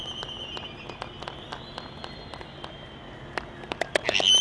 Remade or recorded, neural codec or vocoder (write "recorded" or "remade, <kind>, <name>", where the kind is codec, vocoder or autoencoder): recorded